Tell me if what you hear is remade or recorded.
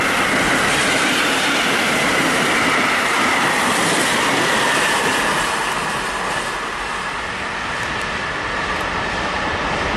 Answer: recorded